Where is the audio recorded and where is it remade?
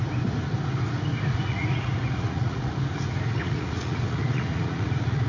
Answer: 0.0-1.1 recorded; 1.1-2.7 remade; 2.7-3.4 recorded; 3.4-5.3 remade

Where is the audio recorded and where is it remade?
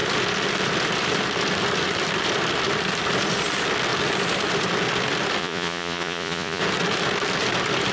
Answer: 0.0-5.4 recorded; 5.4-6.6 remade; 6.6-7.9 recorded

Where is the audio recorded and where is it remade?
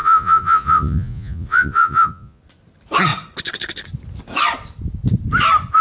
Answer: 0.0-2.4 remade; 2.4-5.8 recorded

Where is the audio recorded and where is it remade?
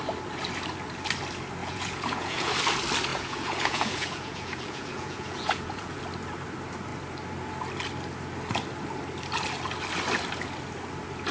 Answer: 0.0-1.6 recorded; 1.6-2.5 remade; 2.5-3.1 recorded; 3.1-6.0 remade; 6.0-11.3 recorded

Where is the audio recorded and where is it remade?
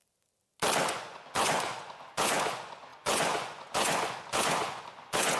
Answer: 0.0-0.9 recorded; 0.9-5.4 remade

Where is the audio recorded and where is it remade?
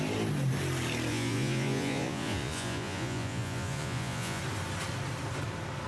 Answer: 0.0-1.1 recorded; 1.1-4.4 remade; 4.4-5.9 recorded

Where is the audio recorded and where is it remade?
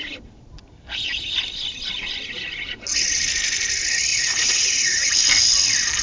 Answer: 0.0-4.1 recorded; 4.1-5.1 remade; 5.1-6.0 recorded